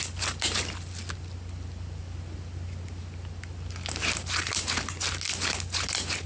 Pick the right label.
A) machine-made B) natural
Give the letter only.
B